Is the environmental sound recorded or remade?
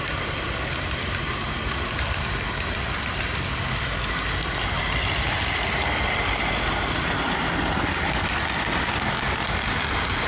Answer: recorded